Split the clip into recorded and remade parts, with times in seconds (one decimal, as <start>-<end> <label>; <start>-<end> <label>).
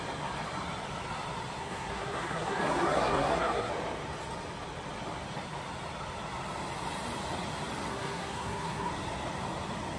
0.0-1.6 recorded; 1.6-3.7 remade; 3.7-7.9 recorded; 7.9-8.9 remade; 8.9-10.0 recorded